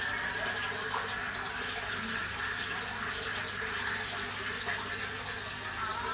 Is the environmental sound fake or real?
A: real